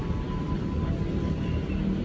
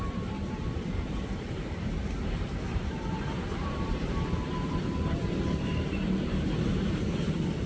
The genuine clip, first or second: first